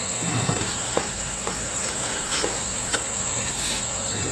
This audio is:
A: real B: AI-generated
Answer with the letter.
B